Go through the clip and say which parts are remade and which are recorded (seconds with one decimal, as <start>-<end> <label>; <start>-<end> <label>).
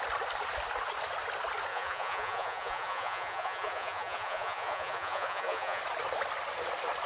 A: 0.0-1.7 recorded; 1.7-5.8 remade; 5.8-7.1 recorded